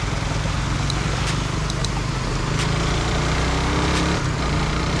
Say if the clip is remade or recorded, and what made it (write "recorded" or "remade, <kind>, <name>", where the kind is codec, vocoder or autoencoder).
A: recorded